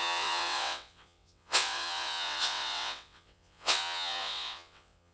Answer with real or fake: fake